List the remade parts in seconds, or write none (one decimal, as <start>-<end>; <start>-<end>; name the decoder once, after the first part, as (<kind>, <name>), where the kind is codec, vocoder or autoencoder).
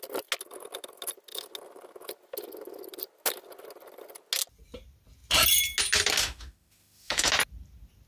6.2-7.3 (autoencoder, DAC-VAE)